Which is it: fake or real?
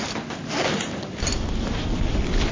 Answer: real